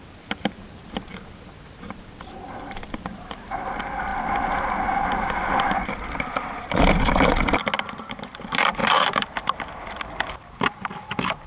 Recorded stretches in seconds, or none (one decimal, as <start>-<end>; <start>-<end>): 4.1-7.8